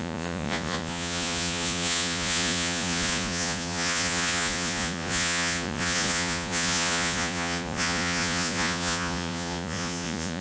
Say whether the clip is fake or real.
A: fake